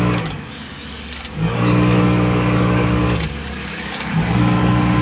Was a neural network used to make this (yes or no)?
yes